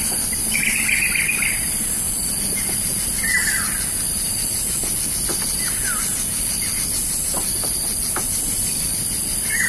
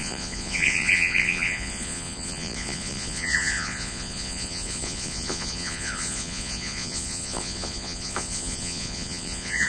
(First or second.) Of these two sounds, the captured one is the first